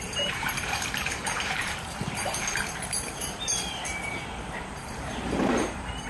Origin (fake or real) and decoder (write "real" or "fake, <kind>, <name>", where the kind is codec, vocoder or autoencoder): fake, vocoder, BigVGAN v2